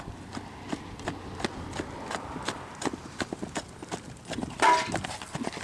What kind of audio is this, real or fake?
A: real